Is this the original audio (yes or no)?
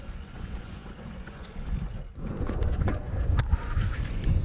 no